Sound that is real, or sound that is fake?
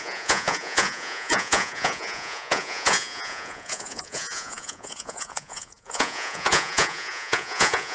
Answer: fake